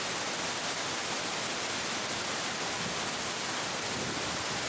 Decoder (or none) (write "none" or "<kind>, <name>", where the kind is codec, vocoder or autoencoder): none